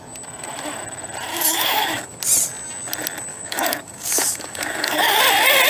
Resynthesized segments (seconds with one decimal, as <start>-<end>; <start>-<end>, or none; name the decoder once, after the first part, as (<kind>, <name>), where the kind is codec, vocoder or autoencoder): 1.3-2.2 (codec, DAC); 3.3-5.2